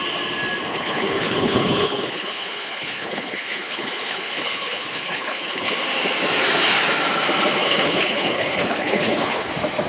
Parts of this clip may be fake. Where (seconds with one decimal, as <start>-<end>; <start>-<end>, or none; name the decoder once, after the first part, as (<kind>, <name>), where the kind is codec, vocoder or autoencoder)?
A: 0.7-5.7 (codec, HILCodec); 7.6-9.5